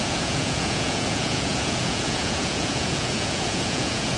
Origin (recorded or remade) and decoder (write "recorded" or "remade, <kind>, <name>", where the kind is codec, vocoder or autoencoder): remade, vocoder, Vocos